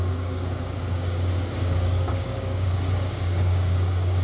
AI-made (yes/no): yes